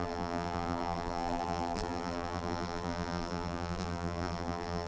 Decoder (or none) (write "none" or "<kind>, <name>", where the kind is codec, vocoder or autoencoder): vocoder, BigVGAN v2